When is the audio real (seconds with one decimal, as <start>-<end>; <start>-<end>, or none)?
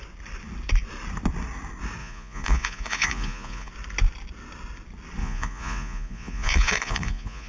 0.0-2.0; 3.7-5.2